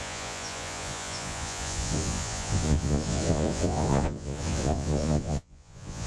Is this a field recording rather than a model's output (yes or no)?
no